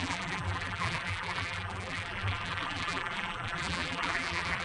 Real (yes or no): no